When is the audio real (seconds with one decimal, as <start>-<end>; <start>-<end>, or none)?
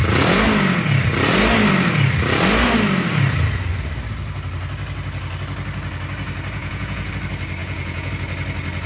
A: 0.0-6.6; 7.1-7.6; 8.1-8.9